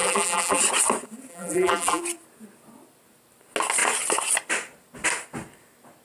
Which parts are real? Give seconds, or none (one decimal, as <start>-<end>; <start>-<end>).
0.6-1.3; 2.0-6.0